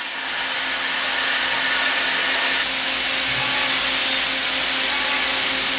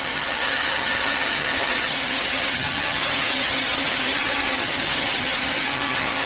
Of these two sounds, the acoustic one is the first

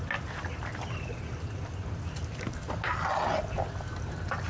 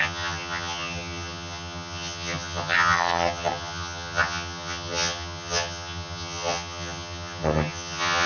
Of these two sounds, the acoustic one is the first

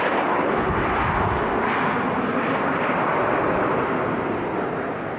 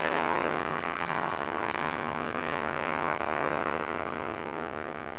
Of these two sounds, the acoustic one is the first